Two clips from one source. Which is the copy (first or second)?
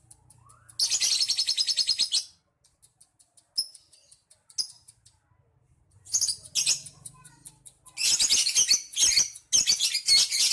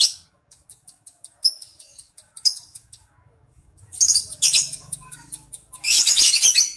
second